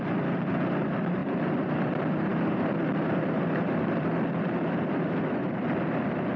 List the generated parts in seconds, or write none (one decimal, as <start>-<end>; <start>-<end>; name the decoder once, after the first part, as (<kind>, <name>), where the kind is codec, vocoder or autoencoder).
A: 1.2-1.7 (vocoder, BigVGAN v2); 2.3-5.0